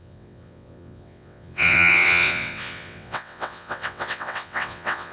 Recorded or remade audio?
remade